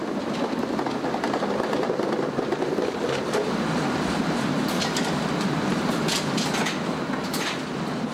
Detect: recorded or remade recorded